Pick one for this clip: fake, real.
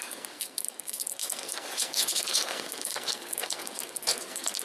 fake